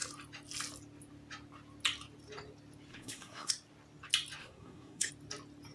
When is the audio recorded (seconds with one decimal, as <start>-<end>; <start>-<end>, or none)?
0.0-2.9; 3.5-4.4; 5.1-5.7